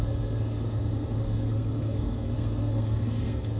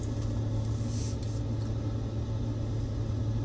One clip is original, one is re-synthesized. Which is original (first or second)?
second